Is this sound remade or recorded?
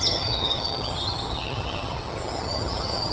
remade